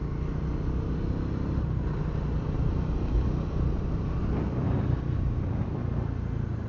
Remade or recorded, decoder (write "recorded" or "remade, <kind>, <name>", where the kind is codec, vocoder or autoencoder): recorded